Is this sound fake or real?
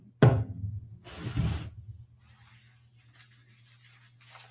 real